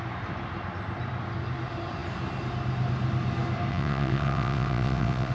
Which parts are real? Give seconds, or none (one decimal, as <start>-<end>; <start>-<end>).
0.0-3.7